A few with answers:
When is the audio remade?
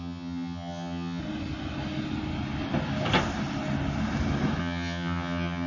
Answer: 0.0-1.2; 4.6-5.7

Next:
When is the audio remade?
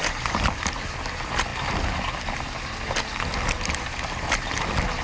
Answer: none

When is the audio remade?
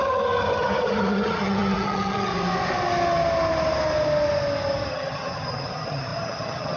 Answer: 0.0-2.3; 4.9-6.8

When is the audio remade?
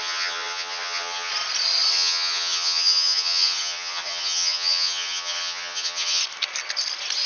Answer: 0.0-1.3; 1.9-6.2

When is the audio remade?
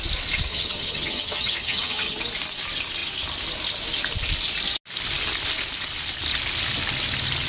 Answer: 0.5-2.2